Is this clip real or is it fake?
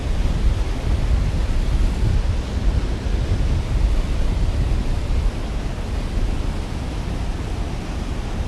real